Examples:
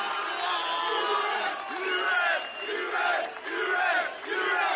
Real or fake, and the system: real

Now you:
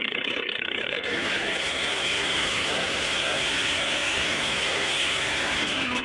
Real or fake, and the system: fake, codec, SNAC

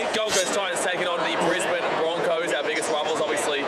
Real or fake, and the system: fake, vocoder, Vocos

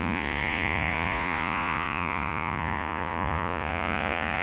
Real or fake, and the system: fake, vocoder, Vocos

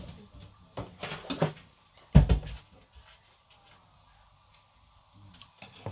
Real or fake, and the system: real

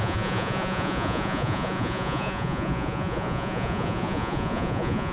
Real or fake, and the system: fake, vocoder, Vocos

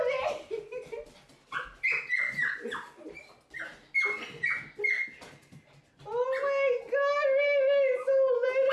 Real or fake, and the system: real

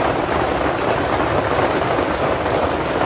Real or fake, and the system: real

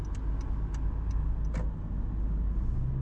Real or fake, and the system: real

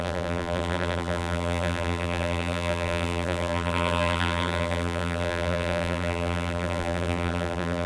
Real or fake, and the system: fake, vocoder, BigVGAN v2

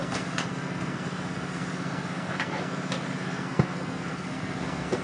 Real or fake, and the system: fake, codec, SNAC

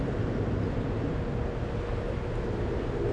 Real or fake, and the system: real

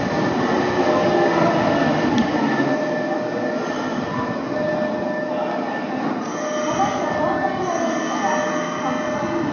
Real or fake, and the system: real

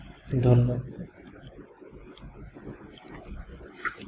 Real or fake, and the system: real